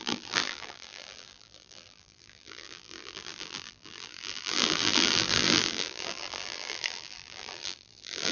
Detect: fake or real fake